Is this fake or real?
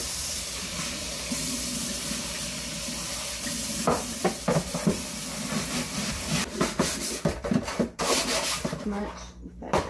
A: fake